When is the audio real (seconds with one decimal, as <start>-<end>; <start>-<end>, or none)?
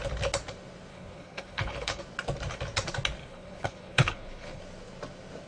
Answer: 0.0-0.9; 2.0-3.2; 4.6-5.5